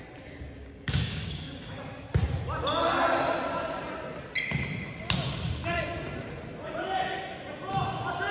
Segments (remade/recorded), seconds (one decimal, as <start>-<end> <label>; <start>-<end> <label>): 0.0-0.6 recorded; 0.6-1.8 remade; 1.8-8.3 recorded